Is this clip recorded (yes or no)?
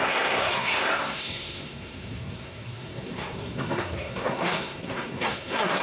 no